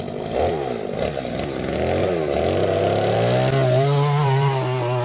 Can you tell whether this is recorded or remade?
recorded